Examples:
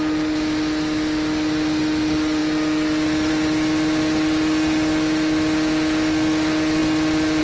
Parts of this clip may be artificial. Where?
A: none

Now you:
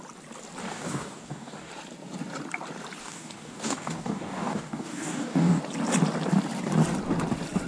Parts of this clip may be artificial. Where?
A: 0.6-1.7 (codec, DAC); 3.0-5.6

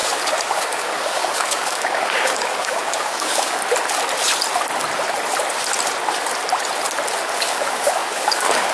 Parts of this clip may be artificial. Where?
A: 0.0-3.6 (codec, DAC); 7.4-8.7

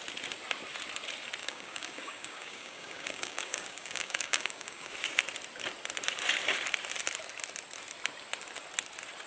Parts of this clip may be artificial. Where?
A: 1.4-4.9 (codec, DAC)

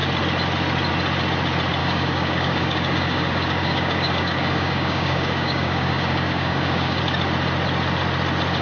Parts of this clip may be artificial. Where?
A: 1.8-7.0 (codec, DAC)

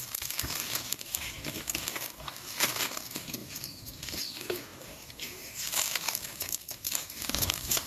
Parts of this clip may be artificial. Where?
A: 0.0-7.9 (codec, DAC)